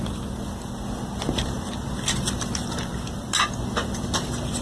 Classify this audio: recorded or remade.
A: recorded